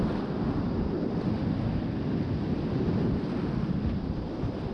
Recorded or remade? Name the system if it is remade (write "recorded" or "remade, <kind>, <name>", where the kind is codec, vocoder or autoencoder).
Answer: recorded